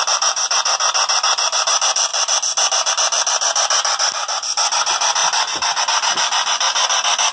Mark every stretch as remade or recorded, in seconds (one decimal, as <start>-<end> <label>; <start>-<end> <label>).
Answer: 0.0-2.1 remade; 2.1-2.9 recorded; 2.9-7.3 remade